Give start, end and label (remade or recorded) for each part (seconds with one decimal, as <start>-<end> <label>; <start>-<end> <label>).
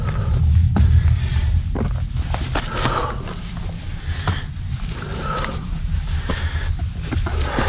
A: 0.0-5.1 recorded; 5.1-6.3 remade; 6.3-7.7 recorded